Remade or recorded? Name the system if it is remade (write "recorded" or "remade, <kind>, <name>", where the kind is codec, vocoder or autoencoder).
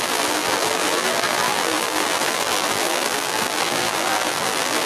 remade, vocoder, BigVGAN v2